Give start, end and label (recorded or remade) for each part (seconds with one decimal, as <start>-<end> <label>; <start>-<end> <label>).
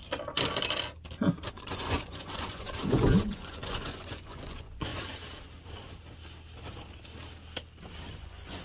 0.0-1.5 recorded; 1.5-4.9 remade; 4.9-8.1 recorded; 8.1-8.6 remade